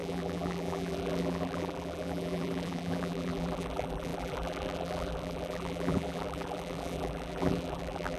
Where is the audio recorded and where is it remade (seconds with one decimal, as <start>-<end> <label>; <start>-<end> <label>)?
0.0-8.2 remade